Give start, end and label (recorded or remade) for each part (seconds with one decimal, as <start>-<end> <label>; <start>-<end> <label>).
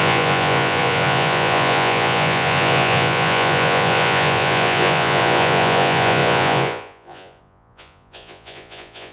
0.0-9.1 remade